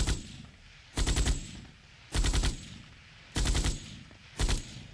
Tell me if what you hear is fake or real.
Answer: fake